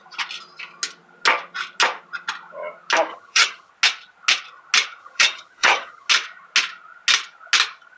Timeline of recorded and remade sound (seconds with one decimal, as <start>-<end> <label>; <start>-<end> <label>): 0.0-3.1 recorded; 3.1-3.7 remade; 3.7-5.0 recorded; 5.0-6.1 remade; 6.1-8.0 recorded